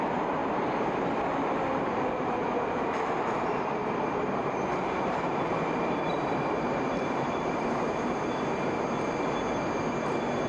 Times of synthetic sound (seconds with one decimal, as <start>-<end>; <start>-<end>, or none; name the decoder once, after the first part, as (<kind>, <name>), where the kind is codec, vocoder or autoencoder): 0.4-1.1 (vocoder, BigVGAN v2); 3.8-8.8